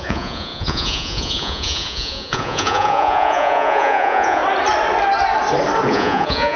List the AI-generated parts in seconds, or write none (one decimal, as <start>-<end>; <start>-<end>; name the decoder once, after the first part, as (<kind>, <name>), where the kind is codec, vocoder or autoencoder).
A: 0.0-4.4 (vocoder, Vocos); 5.9-6.6